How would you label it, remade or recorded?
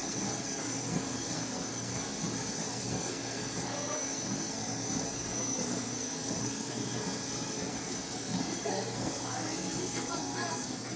remade